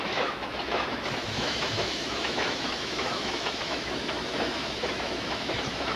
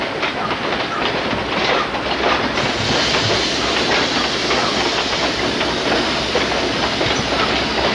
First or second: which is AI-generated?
first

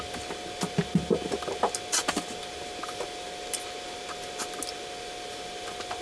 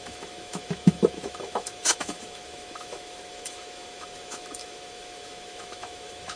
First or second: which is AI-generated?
second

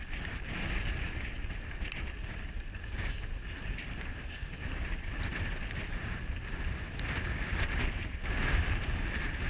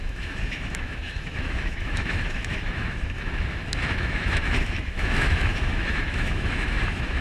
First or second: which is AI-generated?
second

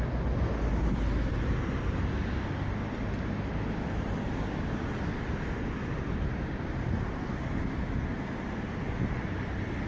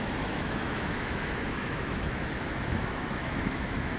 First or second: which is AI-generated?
second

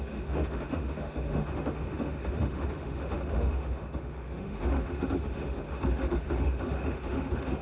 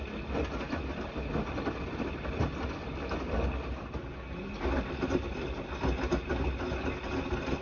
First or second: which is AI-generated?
first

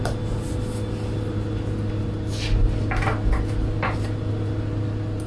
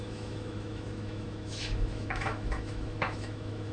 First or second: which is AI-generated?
second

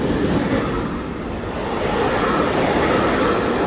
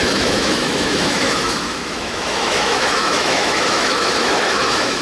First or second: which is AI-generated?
second